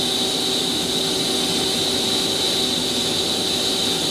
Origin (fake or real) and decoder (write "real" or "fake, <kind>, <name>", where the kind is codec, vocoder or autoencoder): real